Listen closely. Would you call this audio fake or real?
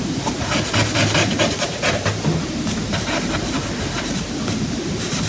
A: real